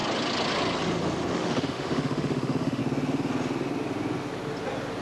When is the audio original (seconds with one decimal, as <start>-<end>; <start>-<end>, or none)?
0.0-1.3; 2.8-5.0